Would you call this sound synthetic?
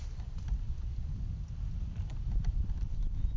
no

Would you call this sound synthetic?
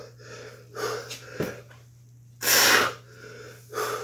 no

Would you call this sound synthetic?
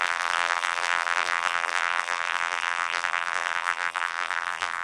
yes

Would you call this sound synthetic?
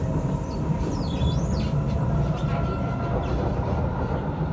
no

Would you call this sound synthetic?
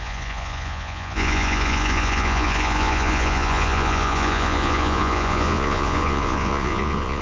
yes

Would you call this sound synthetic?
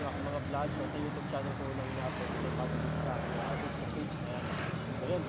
no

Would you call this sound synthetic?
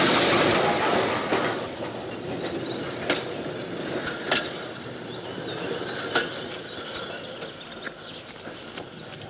no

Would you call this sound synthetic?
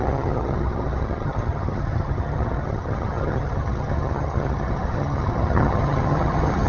yes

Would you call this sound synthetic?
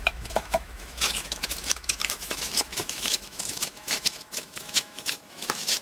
yes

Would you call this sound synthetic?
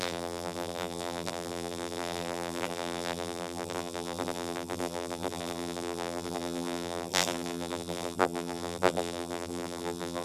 yes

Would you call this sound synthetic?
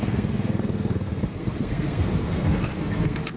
yes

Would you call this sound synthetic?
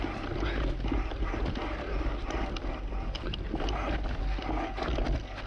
no